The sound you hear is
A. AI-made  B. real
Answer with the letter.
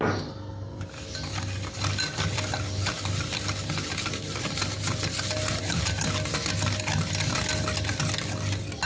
B